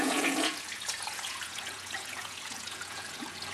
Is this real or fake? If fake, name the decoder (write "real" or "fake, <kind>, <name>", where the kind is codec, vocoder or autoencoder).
fake, vocoder, Vocos